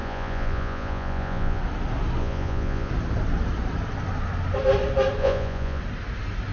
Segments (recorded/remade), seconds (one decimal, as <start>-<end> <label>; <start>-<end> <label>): 0.0-1.6 remade; 1.6-2.2 recorded; 2.2-2.9 remade; 2.9-5.2 recorded; 5.2-5.8 remade; 5.8-6.5 recorded